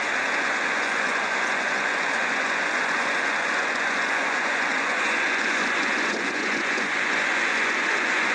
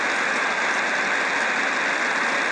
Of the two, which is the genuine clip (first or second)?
second